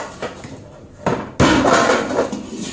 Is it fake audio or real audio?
real